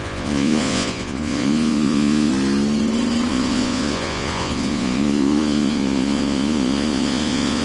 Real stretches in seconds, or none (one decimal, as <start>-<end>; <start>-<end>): 2.3-3.3